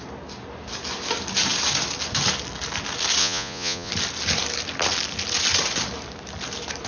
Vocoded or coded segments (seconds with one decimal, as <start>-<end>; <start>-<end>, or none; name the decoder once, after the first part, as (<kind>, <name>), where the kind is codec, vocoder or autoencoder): 3.2-3.9 (vocoder, Vocos)